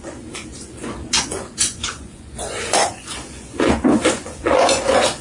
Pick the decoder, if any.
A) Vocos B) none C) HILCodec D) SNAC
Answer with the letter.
A